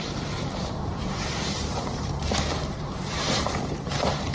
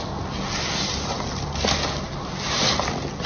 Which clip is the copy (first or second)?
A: first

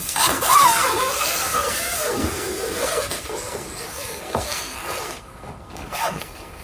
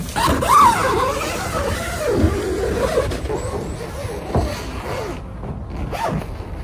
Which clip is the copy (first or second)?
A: first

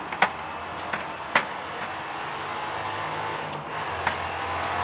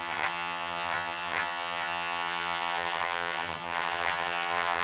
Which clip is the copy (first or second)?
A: second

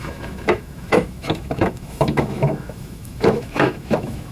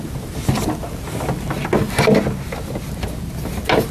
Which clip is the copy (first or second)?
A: first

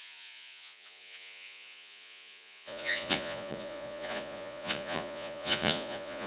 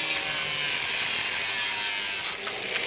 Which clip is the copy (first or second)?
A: first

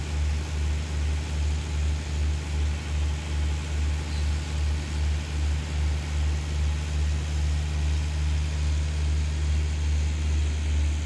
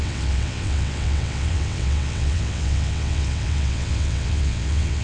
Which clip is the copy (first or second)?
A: second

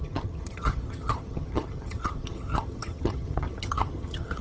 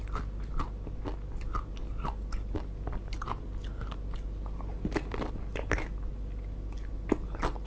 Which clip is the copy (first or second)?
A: first